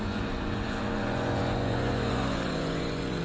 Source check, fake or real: fake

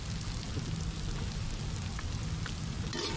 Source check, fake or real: real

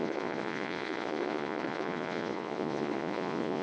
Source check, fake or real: fake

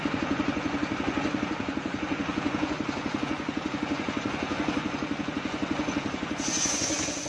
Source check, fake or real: fake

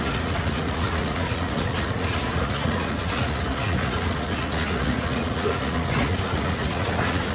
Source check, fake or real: fake